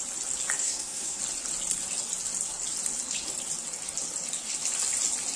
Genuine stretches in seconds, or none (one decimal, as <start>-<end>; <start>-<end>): 0.0-0.6; 1.2-5.4